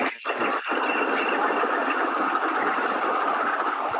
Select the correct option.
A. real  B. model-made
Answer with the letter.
B